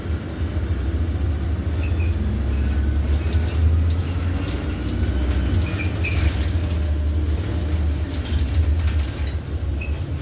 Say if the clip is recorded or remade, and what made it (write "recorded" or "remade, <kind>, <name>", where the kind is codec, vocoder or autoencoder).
recorded